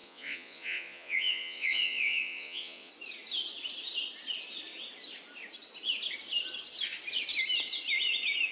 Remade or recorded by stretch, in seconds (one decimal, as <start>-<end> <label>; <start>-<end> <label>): 0.0-2.9 remade; 2.9-8.5 recorded